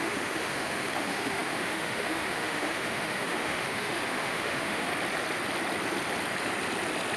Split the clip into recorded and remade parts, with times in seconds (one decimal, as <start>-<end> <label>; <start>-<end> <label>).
0.0-4.9 remade; 4.9-7.2 recorded